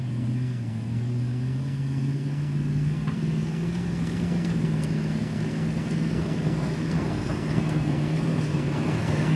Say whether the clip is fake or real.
fake